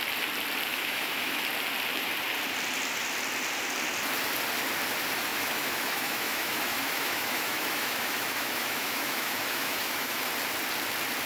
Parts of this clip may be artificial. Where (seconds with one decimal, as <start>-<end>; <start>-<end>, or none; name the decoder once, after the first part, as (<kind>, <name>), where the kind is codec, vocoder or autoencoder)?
0.7-1.4 (autoencoder, DAC-VAE); 5.3-10.3